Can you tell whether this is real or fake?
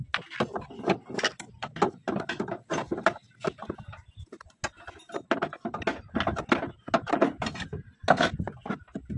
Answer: real